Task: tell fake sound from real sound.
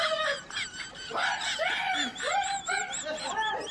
fake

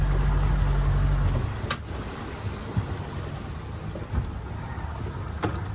real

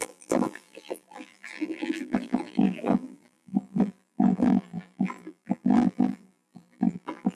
fake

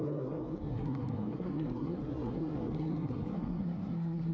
fake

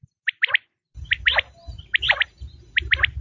real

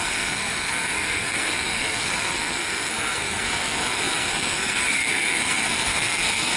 fake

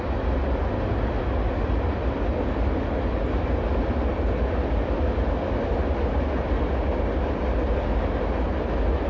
real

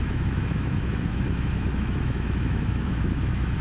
fake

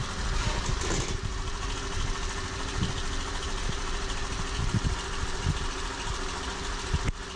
real